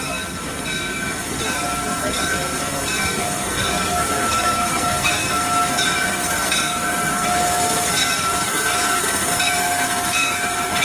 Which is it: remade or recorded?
remade